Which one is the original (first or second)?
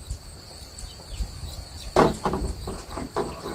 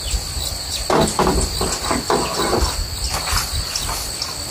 second